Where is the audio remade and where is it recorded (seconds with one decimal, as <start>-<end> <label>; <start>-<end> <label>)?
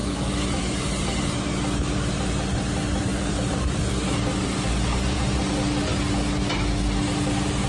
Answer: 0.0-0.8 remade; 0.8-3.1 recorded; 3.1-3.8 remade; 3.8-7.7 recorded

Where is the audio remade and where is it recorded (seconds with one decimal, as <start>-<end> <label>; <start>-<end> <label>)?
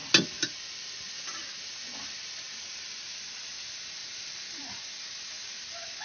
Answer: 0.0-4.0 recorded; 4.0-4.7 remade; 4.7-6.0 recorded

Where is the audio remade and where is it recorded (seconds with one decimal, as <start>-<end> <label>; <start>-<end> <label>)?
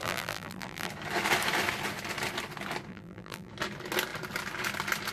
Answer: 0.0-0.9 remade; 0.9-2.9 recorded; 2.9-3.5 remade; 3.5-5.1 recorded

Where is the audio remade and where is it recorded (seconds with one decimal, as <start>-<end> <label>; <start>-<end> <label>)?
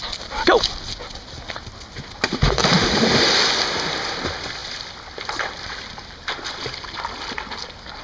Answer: 0.0-2.6 recorded; 2.6-3.1 remade; 3.1-4.6 recorded; 4.6-6.2 remade; 6.2-8.0 recorded